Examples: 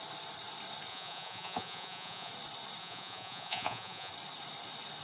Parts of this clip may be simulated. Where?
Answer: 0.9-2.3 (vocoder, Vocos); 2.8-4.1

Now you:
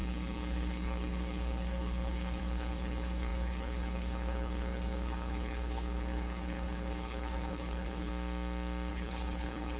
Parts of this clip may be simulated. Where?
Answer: 0.0-8.1 (codec, HILCodec); 8.9-9.8

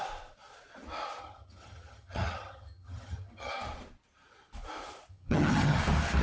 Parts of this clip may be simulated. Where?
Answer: 1.2-3.5 (vocoder, HiFi-GAN); 5.1-5.8

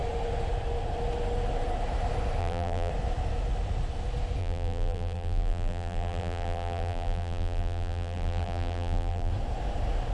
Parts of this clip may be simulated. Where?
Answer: 2.4-2.9 (vocoder, BigVGAN v2); 4.4-9.3